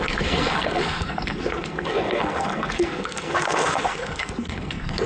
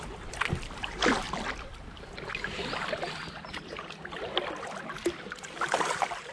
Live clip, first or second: second